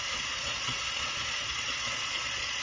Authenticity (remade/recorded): remade